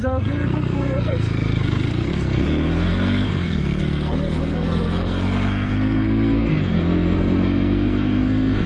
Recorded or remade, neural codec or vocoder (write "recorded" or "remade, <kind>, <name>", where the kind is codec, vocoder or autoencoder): remade, codec, SNAC